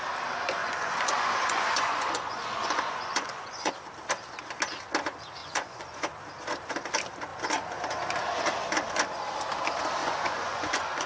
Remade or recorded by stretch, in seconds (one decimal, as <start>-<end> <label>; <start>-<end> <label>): 0.0-0.6 recorded; 0.6-3.7 remade; 3.7-5.4 recorded; 5.4-6.0 remade; 6.0-10.0 recorded; 10.0-11.1 remade